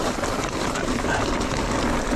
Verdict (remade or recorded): recorded